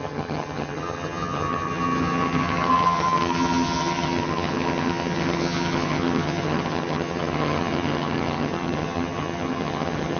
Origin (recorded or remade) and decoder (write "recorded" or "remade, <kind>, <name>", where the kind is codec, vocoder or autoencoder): remade, vocoder, HiFi-GAN